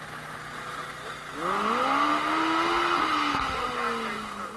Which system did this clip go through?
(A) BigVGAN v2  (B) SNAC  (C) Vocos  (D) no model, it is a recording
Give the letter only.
D